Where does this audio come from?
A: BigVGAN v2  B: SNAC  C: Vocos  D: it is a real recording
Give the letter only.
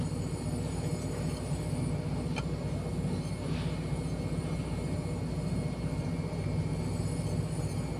D